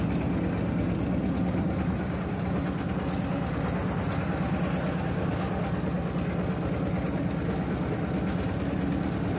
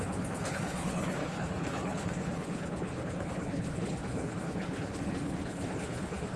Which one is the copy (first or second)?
second